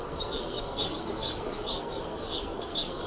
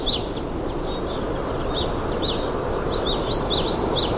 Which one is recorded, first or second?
second